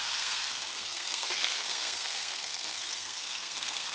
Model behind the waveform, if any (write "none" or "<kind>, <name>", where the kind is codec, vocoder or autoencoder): codec, SNAC